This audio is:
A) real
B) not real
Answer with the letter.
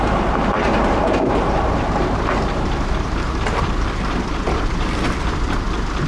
B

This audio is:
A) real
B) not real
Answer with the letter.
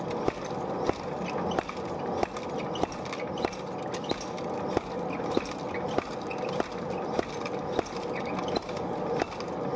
A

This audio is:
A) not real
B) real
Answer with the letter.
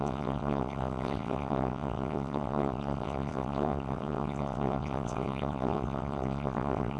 A